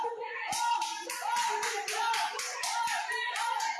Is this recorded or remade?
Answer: recorded